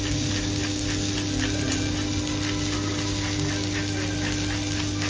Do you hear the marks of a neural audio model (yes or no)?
no